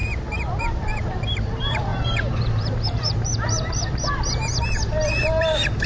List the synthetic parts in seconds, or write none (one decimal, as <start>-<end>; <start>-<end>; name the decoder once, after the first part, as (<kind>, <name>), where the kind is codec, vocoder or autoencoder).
0.6-5.9 (vocoder, BigVGAN v2)